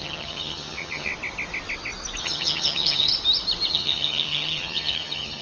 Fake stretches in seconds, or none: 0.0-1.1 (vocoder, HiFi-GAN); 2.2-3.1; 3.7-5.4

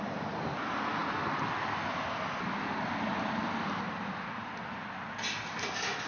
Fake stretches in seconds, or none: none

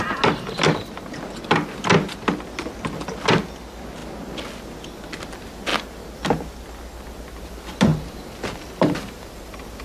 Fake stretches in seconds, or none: 7.9-9.3 (vocoder, BigVGAN v2)